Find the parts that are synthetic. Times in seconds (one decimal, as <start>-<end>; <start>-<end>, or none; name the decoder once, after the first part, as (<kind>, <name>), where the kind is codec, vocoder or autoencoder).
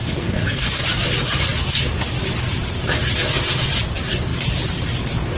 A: 0.0-0.7 (codec, SNAC)